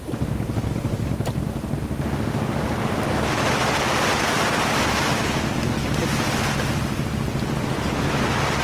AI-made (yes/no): no